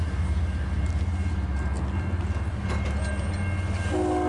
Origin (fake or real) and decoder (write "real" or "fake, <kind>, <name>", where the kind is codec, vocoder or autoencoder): real